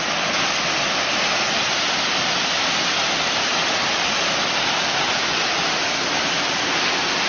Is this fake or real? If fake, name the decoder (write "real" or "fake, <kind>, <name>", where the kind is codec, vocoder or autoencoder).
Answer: real